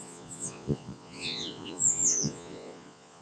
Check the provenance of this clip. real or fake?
fake